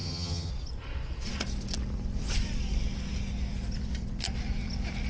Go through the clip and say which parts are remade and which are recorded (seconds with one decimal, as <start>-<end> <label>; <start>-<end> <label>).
0.0-0.5 remade; 0.5-5.1 recorded